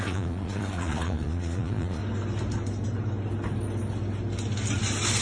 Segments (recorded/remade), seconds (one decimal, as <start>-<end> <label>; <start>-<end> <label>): 0.0-2.0 remade; 2.0-5.2 recorded